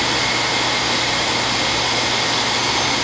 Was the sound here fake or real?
real